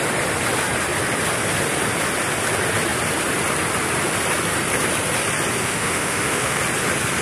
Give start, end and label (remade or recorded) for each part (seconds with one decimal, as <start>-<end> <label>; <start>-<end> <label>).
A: 0.0-5.6 recorded; 5.6-6.6 remade; 6.6-7.2 recorded